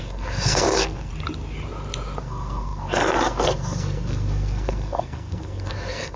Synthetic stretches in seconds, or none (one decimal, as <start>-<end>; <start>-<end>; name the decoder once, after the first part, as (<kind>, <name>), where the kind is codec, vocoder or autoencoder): 0.0-1.1 (codec, SNAC); 2.2-6.2